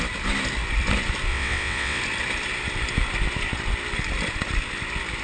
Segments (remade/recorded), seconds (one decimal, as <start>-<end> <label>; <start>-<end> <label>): 0.0-1.3 recorded; 1.3-2.0 remade; 2.0-5.2 recorded